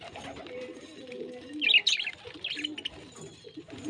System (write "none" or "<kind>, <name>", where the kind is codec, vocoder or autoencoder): none